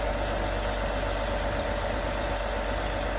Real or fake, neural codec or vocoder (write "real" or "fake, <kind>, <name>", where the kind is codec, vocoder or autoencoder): real